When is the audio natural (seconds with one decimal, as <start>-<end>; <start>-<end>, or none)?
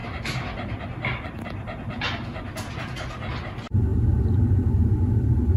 0.0-5.6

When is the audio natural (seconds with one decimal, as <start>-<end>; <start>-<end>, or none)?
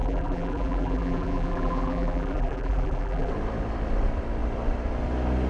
3.3-5.5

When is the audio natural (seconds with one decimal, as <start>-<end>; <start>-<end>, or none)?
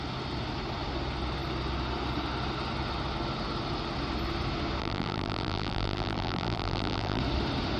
0.0-4.8; 7.2-7.8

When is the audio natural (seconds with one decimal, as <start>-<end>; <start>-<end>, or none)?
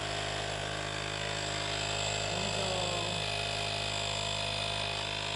0.0-5.4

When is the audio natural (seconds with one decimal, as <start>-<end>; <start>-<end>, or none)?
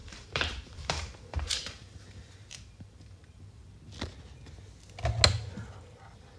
3.7-6.4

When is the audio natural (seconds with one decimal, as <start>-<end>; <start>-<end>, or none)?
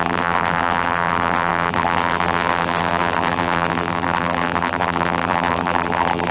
none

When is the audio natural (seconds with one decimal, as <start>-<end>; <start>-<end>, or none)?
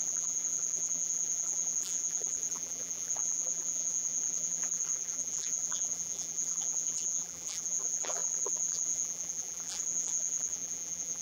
none